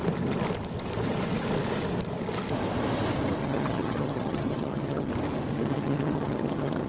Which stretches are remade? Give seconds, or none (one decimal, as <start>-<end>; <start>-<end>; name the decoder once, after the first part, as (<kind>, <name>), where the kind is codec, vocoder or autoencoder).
3.4-5.1 (vocoder, HiFi-GAN); 5.5-6.9